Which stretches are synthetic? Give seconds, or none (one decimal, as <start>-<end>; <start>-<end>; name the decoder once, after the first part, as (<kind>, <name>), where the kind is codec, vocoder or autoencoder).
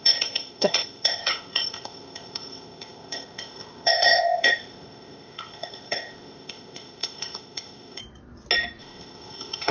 0.0-8.0 (codec, ZipCodec); 8.8-9.7